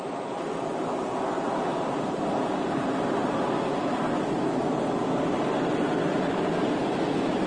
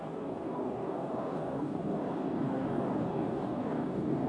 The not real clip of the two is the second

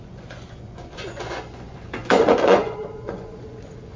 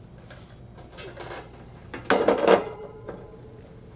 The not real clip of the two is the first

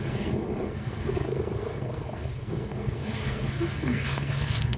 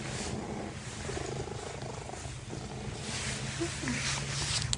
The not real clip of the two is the first